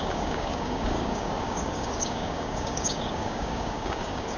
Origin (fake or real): fake